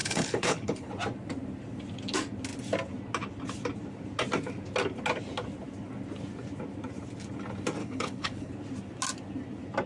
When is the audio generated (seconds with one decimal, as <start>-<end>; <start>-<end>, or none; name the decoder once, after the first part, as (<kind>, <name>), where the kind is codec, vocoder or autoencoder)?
0.0-0.9 (codec, HILCodec); 7.8-8.5